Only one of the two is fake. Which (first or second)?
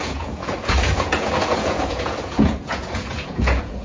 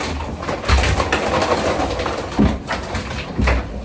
first